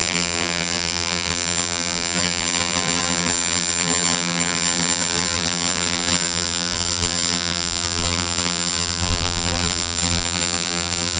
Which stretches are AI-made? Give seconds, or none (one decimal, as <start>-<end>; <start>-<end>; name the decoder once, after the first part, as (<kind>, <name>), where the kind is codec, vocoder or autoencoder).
0.0-11.2 (vocoder, BigVGAN v2)

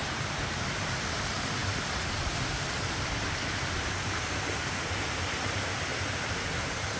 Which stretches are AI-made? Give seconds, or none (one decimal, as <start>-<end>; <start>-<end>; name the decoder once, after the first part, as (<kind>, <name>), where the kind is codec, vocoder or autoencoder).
0.0-1.0 (vocoder, BigVGAN v2); 5.9-7.0

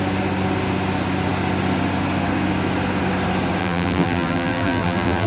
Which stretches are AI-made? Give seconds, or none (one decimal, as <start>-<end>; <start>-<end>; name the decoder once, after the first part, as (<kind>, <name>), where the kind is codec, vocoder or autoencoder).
3.6-5.3 (vocoder, BigVGAN v2)